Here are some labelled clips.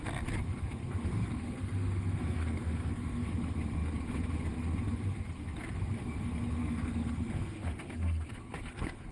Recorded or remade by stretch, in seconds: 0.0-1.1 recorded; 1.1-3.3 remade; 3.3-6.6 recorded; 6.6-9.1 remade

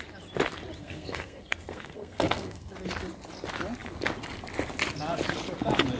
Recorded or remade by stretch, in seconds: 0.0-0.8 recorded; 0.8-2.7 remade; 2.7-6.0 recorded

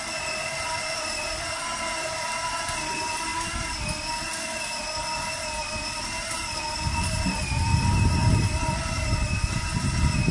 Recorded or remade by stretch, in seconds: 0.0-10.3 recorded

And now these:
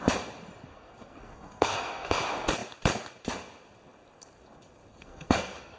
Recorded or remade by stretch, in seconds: 0.0-0.7 recorded; 0.7-2.2 remade; 2.2-4.9 recorded; 4.9-5.8 remade

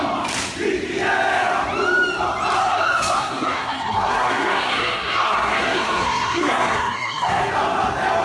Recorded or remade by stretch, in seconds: 0.0-2.6 recorded; 2.6-7.5 remade; 7.5-8.2 recorded

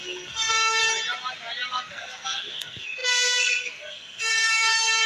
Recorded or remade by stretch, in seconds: 0.0-0.8 remade; 0.8-1.7 recorded; 1.7-5.1 remade